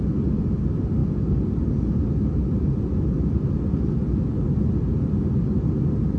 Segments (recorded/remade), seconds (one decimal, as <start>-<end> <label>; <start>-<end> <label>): 0.0-6.2 recorded